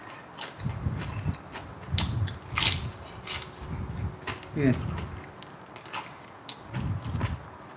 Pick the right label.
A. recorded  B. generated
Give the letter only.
A